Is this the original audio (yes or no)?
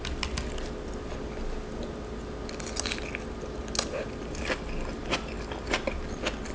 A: yes